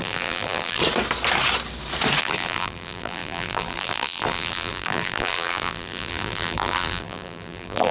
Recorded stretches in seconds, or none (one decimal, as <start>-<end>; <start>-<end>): 0.8-2.2